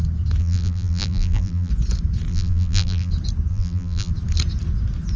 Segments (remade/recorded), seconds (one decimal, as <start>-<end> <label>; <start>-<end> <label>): 0.0-0.4 recorded; 0.4-1.7 remade; 1.7-2.3 recorded; 2.3-3.1 remade; 3.1-3.5 recorded; 3.5-4.1 remade; 4.1-5.2 recorded